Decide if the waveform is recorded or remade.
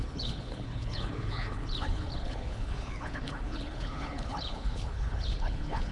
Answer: remade